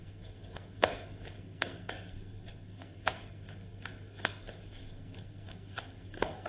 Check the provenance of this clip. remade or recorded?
remade